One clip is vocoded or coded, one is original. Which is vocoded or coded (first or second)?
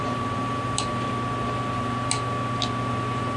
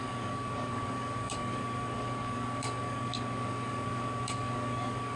second